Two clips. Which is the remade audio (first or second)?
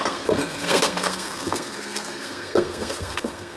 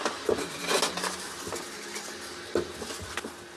first